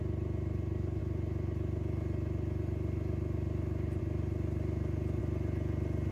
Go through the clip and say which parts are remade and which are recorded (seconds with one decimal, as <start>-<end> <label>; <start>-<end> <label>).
0.0-6.1 recorded